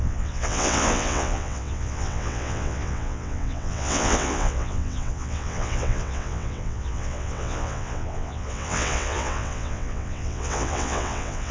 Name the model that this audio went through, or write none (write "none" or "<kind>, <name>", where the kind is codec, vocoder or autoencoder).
vocoder, WaveNeXt